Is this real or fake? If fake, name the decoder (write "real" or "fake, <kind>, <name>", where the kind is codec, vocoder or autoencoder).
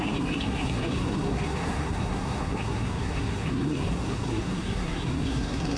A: fake, codec, SNAC